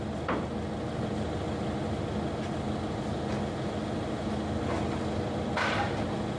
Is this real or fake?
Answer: real